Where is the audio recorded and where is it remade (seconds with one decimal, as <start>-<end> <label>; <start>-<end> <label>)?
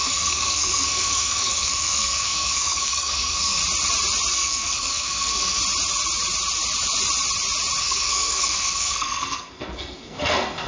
0.0-3.6 remade; 3.6-4.3 recorded; 4.3-5.6 remade; 5.6-7.8 recorded; 7.8-10.7 remade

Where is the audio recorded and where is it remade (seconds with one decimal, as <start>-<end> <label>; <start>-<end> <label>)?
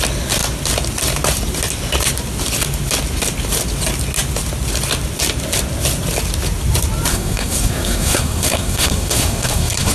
0.0-7.1 recorded; 7.1-9.9 remade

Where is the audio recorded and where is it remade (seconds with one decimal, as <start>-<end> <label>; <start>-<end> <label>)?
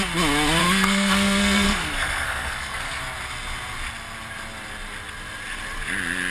0.0-0.6 recorded; 0.6-3.0 remade; 3.0-6.3 recorded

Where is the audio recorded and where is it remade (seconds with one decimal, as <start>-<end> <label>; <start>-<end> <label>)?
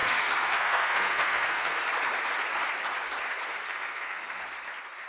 0.0-1.8 remade; 1.8-3.6 recorded; 3.6-4.4 remade; 4.4-5.1 recorded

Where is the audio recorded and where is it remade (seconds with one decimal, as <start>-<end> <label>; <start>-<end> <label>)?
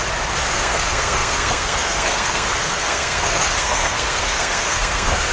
0.0-0.5 recorded; 0.5-5.3 remade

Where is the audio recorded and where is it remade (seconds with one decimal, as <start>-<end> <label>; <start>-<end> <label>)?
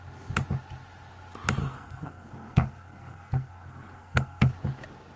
0.0-1.6 recorded; 1.6-4.5 remade; 4.5-5.2 recorded